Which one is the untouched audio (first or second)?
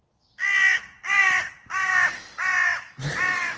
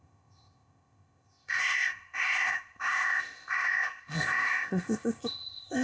first